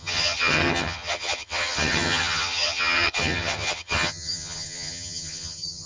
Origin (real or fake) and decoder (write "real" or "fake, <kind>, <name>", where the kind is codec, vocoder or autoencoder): fake, vocoder, HiFi-GAN